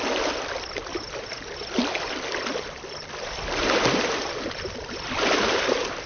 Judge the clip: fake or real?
fake